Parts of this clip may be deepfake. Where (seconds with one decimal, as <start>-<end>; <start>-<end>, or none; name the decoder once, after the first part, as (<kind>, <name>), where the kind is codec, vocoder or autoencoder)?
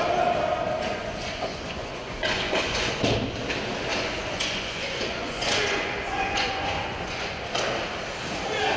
0.9-3.0 (vocoder, Vocos); 3.9-7.4